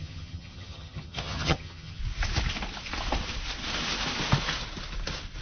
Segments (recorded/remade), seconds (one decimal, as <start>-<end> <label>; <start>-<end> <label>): 0.0-2.0 remade; 2.0-5.4 recorded